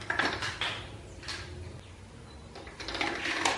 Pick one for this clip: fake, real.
real